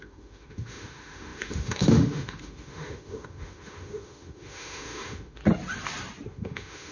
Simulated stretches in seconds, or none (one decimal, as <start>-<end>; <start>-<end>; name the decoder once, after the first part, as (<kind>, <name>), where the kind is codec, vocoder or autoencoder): 0.0-5.4 (autoencoder, DAC-VAE); 6.3-6.9